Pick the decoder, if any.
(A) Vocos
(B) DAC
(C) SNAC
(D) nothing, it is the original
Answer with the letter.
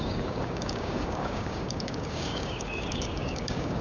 B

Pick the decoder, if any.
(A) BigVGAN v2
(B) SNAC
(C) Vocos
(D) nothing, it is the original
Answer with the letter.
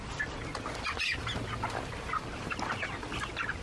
D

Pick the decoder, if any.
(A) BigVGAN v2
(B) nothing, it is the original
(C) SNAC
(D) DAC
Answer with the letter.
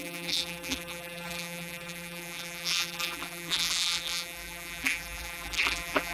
A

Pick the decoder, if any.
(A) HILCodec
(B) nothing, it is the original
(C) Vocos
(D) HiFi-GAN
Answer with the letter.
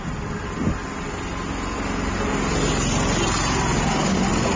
B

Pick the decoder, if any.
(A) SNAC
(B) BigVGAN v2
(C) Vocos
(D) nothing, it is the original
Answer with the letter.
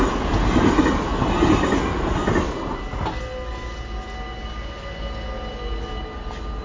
D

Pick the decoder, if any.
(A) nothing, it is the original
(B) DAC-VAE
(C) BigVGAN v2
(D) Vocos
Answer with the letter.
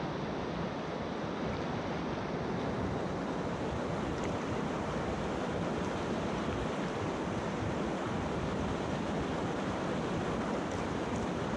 A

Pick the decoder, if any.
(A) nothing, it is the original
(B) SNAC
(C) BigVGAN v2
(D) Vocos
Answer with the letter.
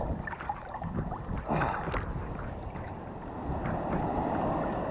A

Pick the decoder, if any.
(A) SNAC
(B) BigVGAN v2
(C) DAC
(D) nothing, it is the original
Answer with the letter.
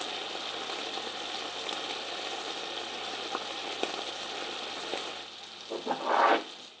D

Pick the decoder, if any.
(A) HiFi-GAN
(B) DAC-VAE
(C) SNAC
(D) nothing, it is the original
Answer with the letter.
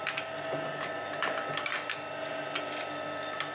D